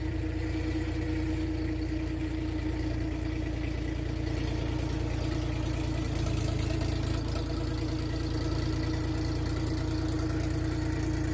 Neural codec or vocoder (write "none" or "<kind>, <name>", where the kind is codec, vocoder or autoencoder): none